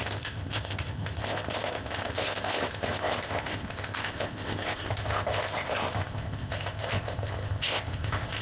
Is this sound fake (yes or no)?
yes